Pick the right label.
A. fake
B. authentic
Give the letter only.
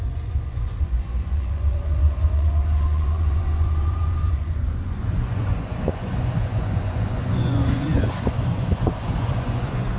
A